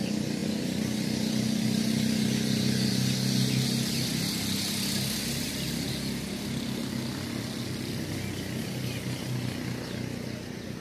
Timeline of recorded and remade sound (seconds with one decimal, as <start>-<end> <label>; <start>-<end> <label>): 0.0-10.8 recorded